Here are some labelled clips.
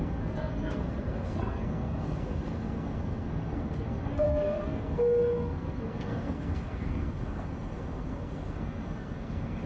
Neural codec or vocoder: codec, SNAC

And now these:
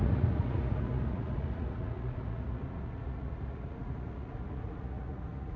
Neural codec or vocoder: vocoder, Vocos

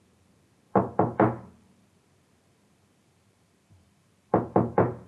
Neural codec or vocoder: vocoder, BigVGAN v2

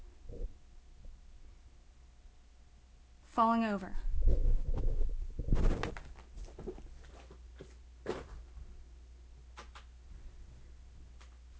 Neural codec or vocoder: none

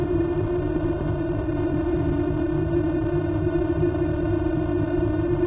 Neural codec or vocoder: vocoder, BigVGAN v2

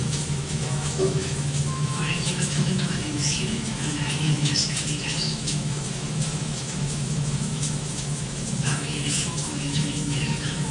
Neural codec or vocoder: autoencoder, DAC-VAE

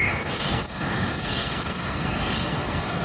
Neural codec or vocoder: codec, SNAC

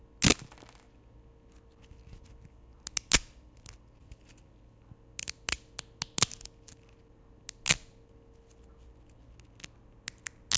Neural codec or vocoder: none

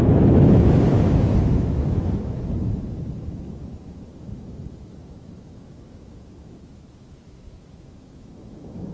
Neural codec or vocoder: autoencoder, DAC-VAE